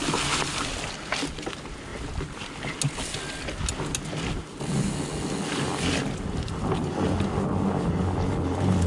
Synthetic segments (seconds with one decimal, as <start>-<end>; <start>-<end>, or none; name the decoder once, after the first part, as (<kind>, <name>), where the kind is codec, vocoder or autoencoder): none